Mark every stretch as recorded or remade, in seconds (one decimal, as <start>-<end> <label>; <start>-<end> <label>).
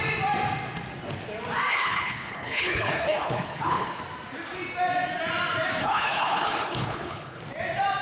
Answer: 0.0-1.7 recorded; 1.7-4.0 remade; 4.0-5.8 recorded; 5.8-7.4 remade; 7.4-8.0 recorded